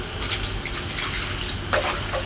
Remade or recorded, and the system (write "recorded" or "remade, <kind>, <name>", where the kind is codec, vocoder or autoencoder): recorded